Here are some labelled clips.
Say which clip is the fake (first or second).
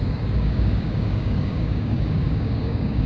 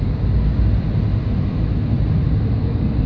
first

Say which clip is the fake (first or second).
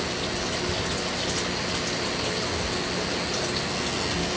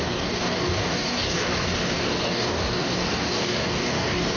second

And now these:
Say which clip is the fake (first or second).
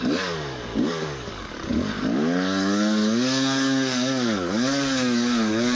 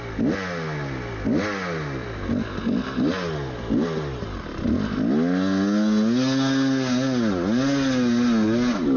first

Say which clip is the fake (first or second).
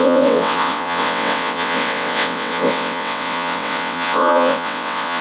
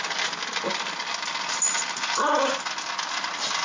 first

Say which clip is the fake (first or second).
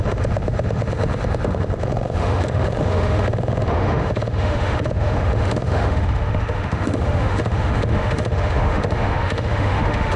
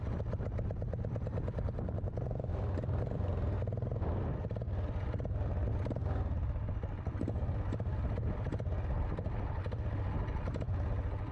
first